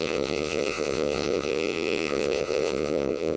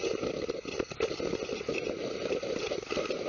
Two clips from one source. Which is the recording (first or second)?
second